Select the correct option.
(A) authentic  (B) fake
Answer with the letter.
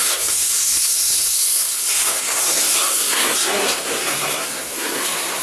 B